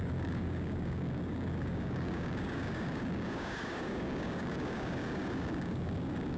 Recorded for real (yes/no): no